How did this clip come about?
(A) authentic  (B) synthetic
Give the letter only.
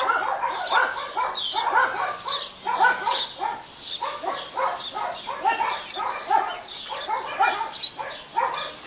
A